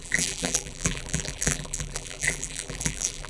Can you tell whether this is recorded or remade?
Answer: remade